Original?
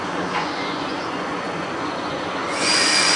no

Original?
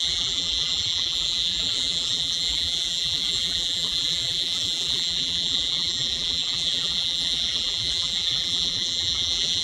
no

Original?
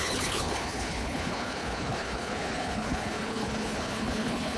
no